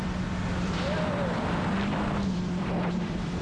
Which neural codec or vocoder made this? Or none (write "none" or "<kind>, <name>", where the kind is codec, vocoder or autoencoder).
vocoder, BigVGAN v2